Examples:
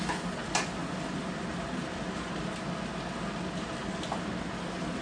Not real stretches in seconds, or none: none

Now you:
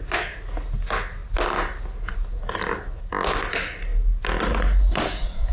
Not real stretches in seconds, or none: none

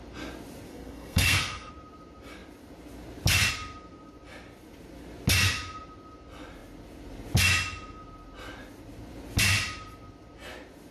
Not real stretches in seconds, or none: 0.7-1.7 (codec, SNAC)

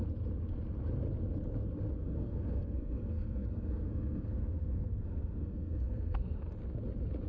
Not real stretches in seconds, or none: 2.0-6.4 (codec, SNAC)

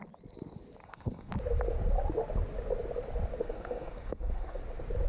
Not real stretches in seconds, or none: 0.8-1.3 (codec, SNAC); 3.4-4.6

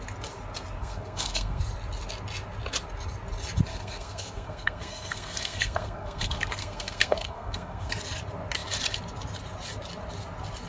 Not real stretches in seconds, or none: 0.8-1.6 (codec, SNAC); 3.7-8.0

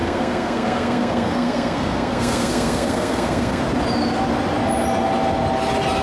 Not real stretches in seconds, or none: 0.0-3.6 (codec, SNAC)